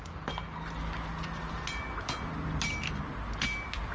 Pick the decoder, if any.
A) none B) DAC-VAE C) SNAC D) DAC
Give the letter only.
A